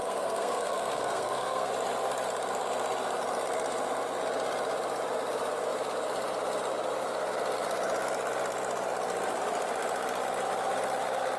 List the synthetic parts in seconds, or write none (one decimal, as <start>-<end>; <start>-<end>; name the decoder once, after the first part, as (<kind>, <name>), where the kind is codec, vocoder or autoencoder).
0.0-1.7 (codec, SNAC)